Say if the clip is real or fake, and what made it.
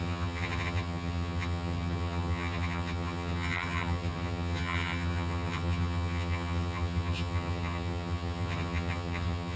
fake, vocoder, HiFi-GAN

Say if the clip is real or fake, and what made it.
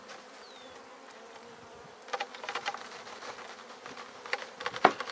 real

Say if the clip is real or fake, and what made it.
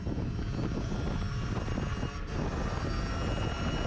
real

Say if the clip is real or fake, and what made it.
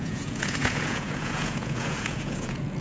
fake, vocoder, Vocos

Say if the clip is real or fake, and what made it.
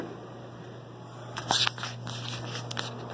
real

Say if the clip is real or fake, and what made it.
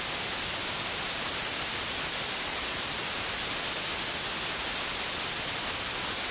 real